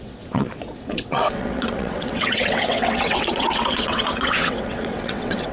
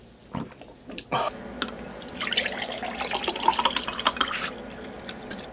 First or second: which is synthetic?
first